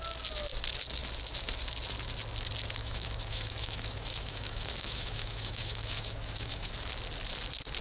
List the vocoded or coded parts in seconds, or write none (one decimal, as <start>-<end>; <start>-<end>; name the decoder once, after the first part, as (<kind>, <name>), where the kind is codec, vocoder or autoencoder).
2.8-6.7 (autoencoder, DAC-VAE)